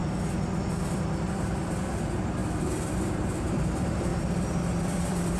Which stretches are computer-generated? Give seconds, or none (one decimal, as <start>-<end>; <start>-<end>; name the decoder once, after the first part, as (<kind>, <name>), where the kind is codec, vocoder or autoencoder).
0.8-4.1 (vocoder, BigVGAN v2); 4.8-5.4